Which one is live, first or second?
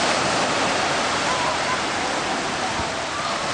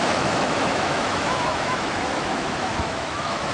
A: first